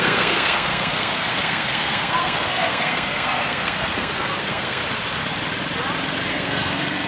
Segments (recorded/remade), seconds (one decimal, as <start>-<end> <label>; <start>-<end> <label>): 0.0-4.8 remade; 4.8-6.3 recorded; 6.3-7.1 remade

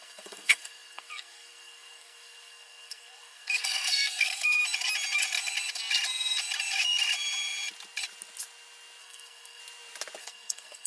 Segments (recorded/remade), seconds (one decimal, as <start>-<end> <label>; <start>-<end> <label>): 0.0-4.6 remade; 4.6-9.0 recorded; 9.0-9.6 remade; 9.6-10.2 recorded; 10.2-10.9 remade

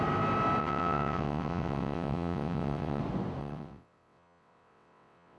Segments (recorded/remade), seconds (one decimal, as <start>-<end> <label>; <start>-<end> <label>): 0.0-0.6 recorded; 0.6-3.0 remade; 3.0-3.4 recorded; 3.4-5.4 remade

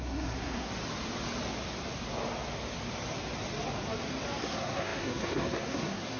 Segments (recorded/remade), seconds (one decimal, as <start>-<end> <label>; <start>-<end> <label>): 0.0-0.7 remade; 0.7-4.4 recorded; 4.4-6.2 remade

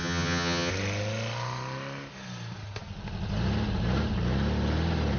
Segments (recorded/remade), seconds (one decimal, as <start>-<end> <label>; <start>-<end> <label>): 0.0-0.7 remade; 0.7-5.2 recorded

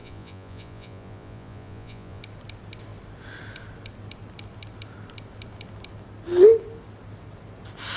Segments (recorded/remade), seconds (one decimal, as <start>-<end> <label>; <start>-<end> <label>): 0.0-2.2 remade; 2.2-8.0 recorded